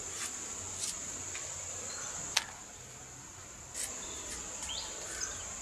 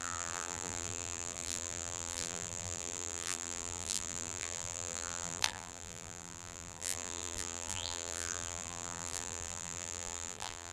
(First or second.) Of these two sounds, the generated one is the second